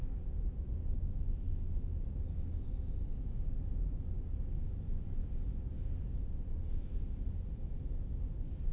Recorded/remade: recorded